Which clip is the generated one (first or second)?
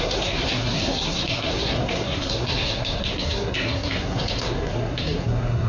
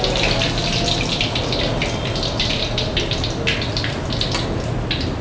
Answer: first